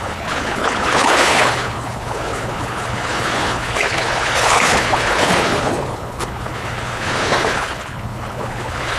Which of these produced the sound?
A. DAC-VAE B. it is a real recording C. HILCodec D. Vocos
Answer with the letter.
C